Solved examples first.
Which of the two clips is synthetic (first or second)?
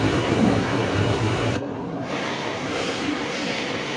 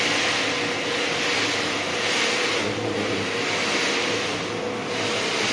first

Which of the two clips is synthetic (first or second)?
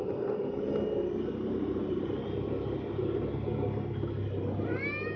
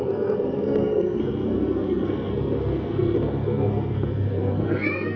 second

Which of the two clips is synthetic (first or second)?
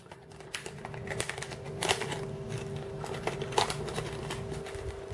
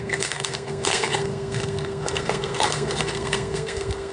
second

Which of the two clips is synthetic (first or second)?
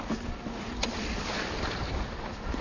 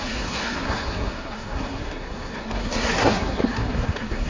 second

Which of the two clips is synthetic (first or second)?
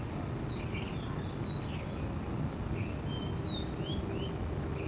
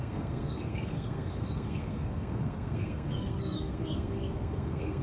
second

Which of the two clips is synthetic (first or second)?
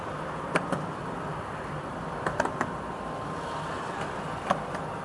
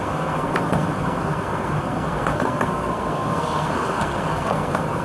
second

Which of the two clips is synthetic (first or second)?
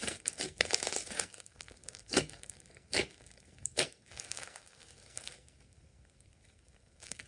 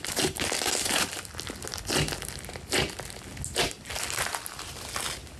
first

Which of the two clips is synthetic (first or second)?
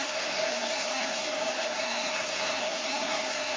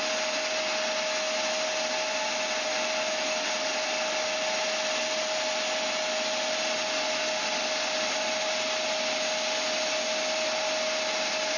first